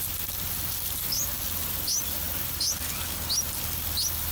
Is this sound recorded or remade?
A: recorded